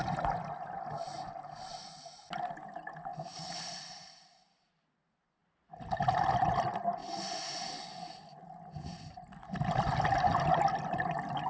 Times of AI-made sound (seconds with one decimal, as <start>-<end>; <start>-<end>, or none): 3.1-4.1